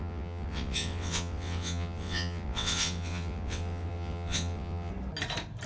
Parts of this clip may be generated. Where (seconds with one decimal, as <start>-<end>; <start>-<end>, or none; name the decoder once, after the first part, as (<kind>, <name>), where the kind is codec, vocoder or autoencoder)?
0.0-4.9 (vocoder, WaveNeXt)